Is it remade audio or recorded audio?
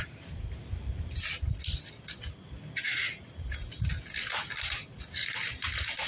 recorded